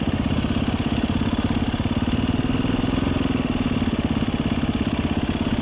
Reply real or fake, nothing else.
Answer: real